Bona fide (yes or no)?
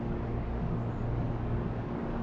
no